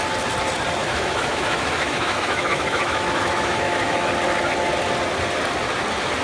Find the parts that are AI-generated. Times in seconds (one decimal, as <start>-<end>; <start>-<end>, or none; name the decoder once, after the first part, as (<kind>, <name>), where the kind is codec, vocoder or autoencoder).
0.8-4.1 (autoencoder, DAC-VAE)